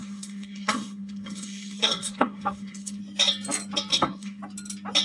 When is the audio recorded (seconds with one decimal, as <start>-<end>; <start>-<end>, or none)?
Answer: 3.0-3.9; 4.4-5.0